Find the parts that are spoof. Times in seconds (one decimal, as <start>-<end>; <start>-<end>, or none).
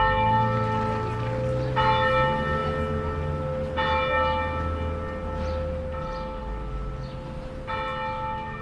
none